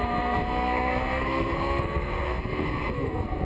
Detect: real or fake fake